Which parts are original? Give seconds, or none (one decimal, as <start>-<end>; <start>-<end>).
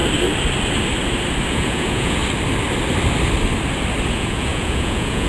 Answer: 0.0-1.5; 2.2-4.1